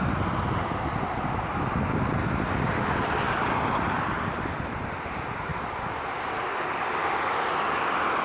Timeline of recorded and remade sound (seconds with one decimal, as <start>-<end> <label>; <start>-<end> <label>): 0.0-8.2 recorded